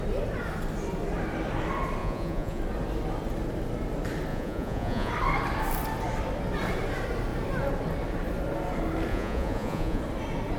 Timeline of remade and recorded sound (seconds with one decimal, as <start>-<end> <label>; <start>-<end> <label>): 0.0-2.0 recorded; 2.0-2.6 remade; 2.6-4.3 recorded; 4.3-5.1 remade; 5.1-9.1 recorded; 9.1-10.0 remade; 10.0-10.6 recorded